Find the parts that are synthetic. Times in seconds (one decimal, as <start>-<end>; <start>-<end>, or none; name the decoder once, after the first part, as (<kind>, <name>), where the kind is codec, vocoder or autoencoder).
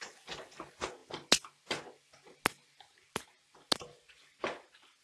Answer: none